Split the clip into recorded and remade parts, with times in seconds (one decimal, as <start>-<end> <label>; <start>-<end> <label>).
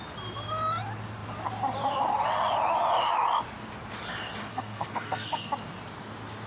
0.0-4.5 recorded; 4.5-5.5 remade; 5.5-6.5 recorded